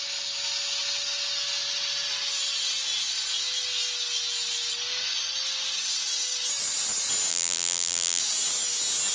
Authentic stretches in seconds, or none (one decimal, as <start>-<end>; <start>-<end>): 0.0-7.3; 8.2-9.1

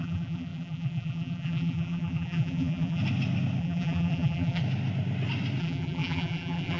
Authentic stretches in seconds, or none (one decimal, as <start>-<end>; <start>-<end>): 3.0-3.6; 4.6-5.6